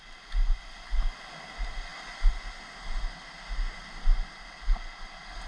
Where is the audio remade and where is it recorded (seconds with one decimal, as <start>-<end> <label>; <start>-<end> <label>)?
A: 0.0-5.5 recorded